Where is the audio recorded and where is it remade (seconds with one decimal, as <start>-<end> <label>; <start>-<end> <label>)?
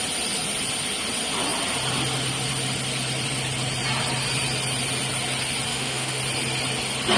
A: 0.0-5.7 recorded; 5.7-6.2 remade; 6.2-7.2 recorded